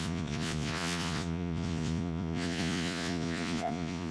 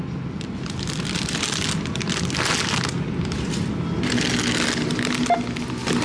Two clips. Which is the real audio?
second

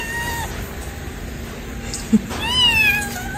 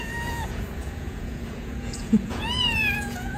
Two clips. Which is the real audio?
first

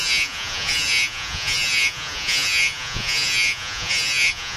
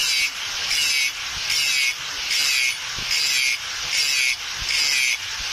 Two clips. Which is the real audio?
second